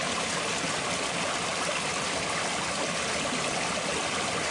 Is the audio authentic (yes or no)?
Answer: yes